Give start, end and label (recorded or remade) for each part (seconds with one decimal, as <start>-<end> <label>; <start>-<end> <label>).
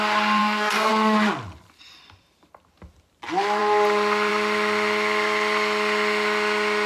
0.0-0.4 recorded; 0.4-0.9 remade; 0.9-6.9 recorded